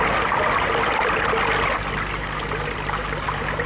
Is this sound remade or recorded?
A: recorded